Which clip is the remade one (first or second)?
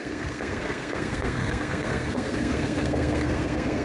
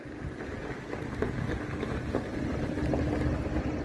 first